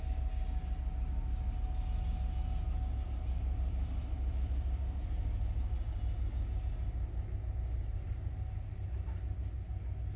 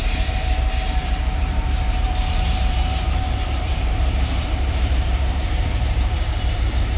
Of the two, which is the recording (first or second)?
first